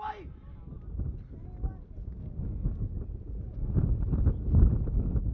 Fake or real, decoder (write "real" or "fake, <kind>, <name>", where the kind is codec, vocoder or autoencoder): real